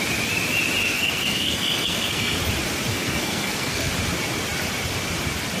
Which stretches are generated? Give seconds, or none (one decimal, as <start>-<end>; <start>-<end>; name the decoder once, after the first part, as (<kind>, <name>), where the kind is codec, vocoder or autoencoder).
0.8-2.4 (codec, SNAC); 2.9-3.9

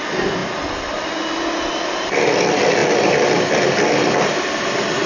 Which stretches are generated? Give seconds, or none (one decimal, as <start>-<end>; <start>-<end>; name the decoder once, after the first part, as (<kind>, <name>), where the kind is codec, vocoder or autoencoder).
none

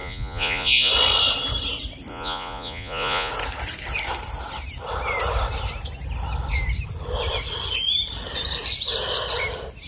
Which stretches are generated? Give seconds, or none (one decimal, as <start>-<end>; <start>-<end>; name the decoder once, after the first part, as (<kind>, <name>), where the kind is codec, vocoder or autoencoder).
0.0-0.9 (vocoder, Vocos); 2.1-3.3

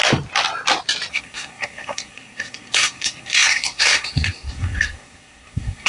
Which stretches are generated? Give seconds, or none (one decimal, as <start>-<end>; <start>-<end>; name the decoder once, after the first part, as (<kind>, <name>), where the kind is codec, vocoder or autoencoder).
1.1-5.9 (codec, SNAC)

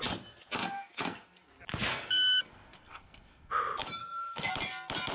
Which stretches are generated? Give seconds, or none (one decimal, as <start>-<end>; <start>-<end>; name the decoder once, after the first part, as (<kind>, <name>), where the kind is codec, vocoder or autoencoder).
0.6-1.5 (codec, SNAC); 1.9-3.5; 4.0-4.5